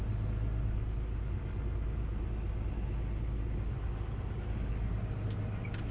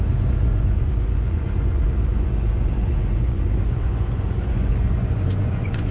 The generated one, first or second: second